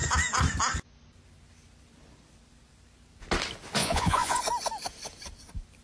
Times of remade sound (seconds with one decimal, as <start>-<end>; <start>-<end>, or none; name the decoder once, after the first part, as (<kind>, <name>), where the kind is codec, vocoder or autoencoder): 3.8-4.4 (vocoder, Vocos)